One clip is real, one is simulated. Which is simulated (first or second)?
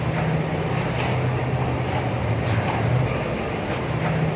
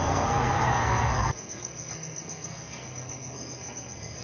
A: second